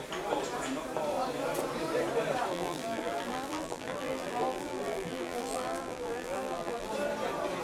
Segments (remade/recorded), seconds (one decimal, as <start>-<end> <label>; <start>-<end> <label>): 0.0-2.5 recorded; 2.5-6.9 remade; 6.9-7.6 recorded